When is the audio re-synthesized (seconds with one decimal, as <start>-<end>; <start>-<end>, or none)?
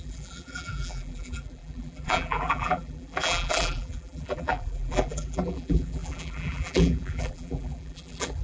0.0-8.4